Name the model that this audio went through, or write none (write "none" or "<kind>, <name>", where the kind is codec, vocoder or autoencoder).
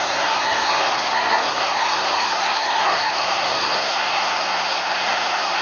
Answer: codec, SNAC